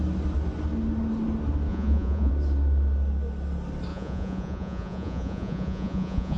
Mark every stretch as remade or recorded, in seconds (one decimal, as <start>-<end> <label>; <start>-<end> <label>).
0.0-1.7 recorded; 1.7-2.3 remade; 2.3-3.9 recorded; 3.9-6.4 remade